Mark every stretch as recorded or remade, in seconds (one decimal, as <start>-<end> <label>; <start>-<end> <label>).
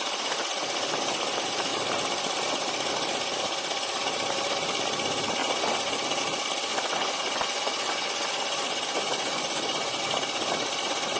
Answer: 0.0-5.4 recorded; 5.4-6.2 remade; 6.2-6.7 recorded; 6.7-10.0 remade; 10.0-11.2 recorded